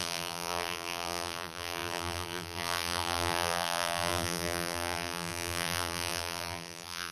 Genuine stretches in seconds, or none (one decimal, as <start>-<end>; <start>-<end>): none